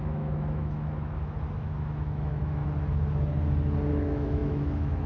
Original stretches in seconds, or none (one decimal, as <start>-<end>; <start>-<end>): 2.6-3.9